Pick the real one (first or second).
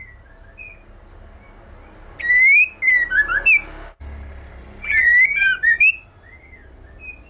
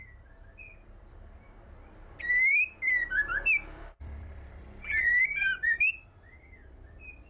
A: first